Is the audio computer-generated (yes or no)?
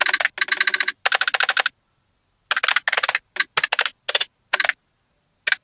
no